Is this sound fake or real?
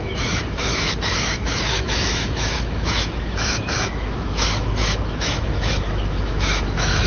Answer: fake